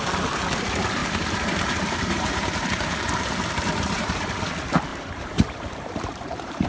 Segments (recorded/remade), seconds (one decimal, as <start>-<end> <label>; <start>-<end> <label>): 0.0-1.0 recorded; 1.0-4.1 remade; 4.1-4.9 recorded; 4.9-6.7 remade